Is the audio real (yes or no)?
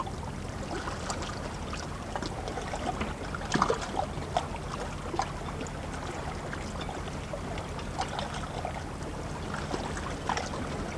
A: yes